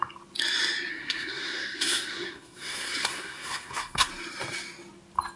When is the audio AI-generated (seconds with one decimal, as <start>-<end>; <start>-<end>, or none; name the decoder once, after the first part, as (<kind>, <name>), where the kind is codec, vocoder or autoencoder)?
0.9-4.1 (codec, SNAC)